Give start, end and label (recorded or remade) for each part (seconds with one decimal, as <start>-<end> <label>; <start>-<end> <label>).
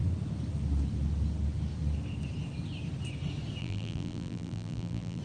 0.0-3.6 recorded; 3.6-5.2 remade